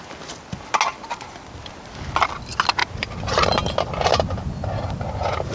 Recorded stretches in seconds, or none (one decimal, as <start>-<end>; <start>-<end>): 0.0-5.5